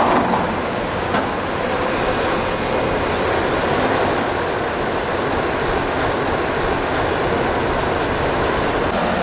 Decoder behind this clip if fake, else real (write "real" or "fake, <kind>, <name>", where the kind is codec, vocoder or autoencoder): real